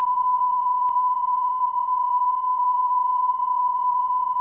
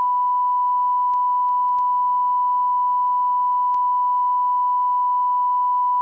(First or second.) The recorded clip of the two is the second